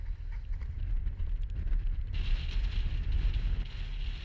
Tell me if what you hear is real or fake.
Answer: fake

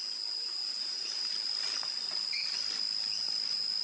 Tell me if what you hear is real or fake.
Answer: real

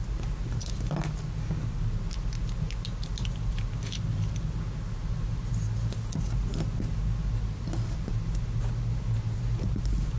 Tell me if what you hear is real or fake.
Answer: real